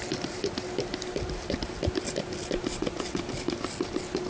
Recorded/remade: recorded